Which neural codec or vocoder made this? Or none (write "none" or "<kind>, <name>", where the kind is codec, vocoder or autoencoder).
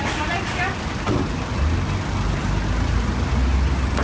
none